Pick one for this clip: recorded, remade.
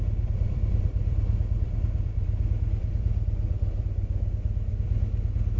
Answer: remade